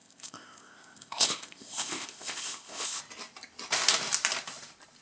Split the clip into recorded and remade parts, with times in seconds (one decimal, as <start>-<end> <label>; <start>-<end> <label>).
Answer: 0.0-3.0 remade; 3.0-5.0 recorded